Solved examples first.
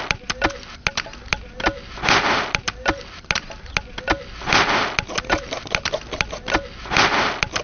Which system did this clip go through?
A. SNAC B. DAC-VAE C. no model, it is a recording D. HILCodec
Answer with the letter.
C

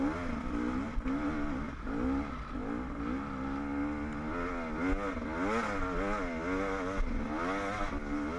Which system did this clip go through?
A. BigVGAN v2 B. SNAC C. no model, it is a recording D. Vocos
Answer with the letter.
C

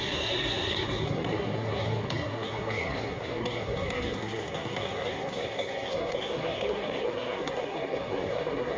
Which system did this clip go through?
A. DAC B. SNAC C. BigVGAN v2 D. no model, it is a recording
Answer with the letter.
B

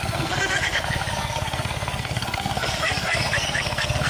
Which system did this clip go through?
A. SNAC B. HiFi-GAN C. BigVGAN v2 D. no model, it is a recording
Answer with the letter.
A